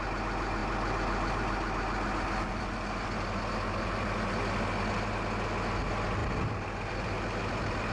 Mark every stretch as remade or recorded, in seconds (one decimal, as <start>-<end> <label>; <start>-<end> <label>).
0.0-7.9 recorded